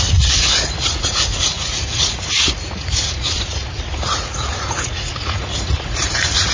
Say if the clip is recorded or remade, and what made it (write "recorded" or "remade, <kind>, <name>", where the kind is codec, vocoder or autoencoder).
remade, vocoder, Vocos